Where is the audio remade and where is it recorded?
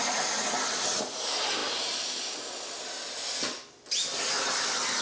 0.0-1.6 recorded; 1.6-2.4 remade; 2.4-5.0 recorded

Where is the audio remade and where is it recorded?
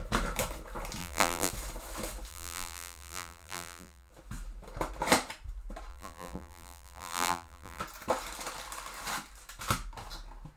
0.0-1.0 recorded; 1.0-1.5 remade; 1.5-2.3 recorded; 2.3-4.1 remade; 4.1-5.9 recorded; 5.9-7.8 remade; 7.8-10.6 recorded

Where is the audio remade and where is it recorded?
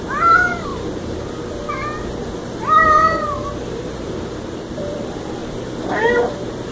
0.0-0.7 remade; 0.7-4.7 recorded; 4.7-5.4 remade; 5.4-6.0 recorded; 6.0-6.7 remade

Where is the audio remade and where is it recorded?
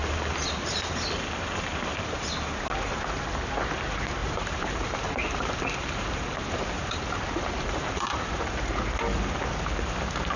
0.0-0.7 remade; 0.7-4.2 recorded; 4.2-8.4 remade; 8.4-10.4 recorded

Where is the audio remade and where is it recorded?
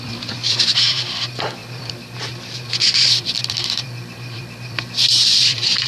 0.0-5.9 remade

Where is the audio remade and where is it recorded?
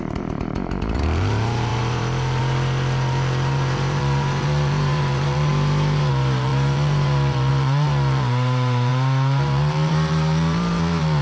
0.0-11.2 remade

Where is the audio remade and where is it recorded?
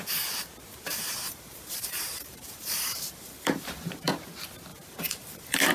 0.0-0.7 recorded; 0.7-4.1 remade; 4.1-4.7 recorded; 4.7-5.7 remade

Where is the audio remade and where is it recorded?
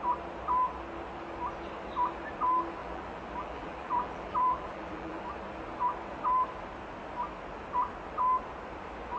0.0-2.8 recorded; 2.8-5.2 remade; 5.2-9.2 recorded